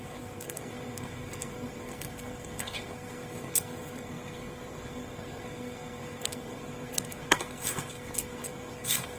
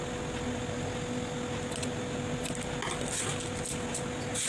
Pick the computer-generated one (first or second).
first